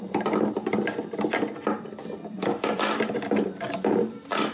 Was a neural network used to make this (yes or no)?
no